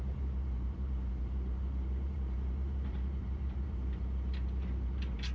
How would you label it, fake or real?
fake